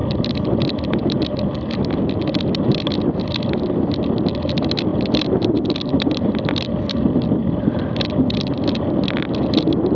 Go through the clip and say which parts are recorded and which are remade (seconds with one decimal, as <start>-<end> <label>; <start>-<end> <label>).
0.0-0.6 remade; 0.6-4.9 recorded; 4.9-8.9 remade; 8.9-9.9 recorded

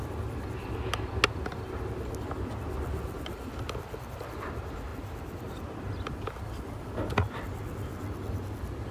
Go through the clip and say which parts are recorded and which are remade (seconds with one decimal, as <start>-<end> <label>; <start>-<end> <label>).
0.0-8.9 recorded

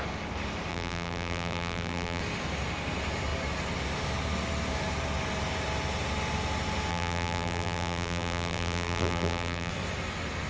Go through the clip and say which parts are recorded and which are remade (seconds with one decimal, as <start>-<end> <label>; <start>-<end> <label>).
0.0-0.7 recorded; 0.7-2.2 remade; 2.2-6.9 recorded; 6.9-9.7 remade; 9.7-10.5 recorded

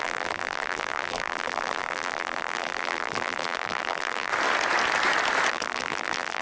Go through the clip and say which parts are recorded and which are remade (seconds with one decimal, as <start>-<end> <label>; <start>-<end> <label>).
0.0-4.3 remade; 4.3-5.5 recorded; 5.5-6.4 remade

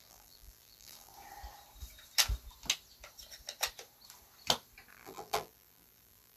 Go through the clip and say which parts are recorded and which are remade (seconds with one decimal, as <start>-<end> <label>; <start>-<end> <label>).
0.0-1.1 remade; 1.1-4.9 recorded; 4.9-6.4 remade

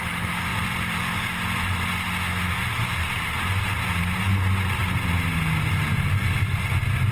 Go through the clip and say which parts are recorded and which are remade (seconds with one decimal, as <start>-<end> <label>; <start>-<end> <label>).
0.0-0.5 recorded; 0.5-1.2 remade; 1.2-7.1 recorded

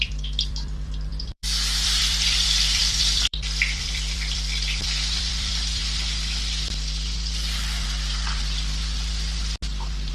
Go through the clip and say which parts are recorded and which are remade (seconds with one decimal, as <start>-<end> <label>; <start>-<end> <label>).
0.0-5.8 remade; 5.8-10.1 recorded

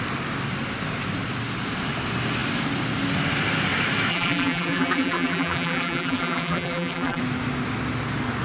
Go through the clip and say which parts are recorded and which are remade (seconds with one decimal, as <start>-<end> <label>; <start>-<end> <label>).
0.0-4.1 recorded; 4.1-7.2 remade; 7.2-8.4 recorded